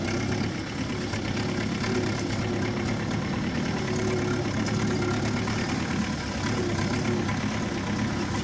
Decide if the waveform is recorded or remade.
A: recorded